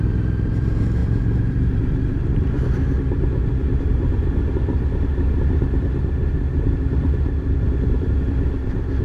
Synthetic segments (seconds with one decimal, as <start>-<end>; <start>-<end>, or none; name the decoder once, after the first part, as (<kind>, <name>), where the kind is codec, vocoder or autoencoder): 1.0-2.9 (vocoder, BigVGAN v2); 3.4-5.0